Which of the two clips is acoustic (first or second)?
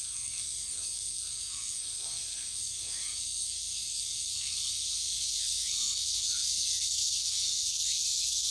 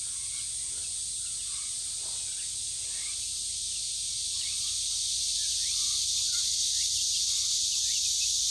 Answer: second